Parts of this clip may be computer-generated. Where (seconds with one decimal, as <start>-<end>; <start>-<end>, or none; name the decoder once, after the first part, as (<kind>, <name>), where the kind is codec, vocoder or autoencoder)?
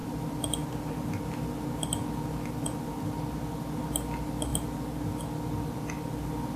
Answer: none